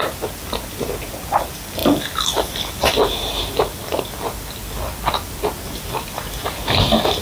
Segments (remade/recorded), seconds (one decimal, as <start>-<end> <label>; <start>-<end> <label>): 0.0-7.2 recorded